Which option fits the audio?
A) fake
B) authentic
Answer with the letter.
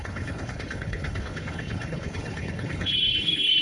A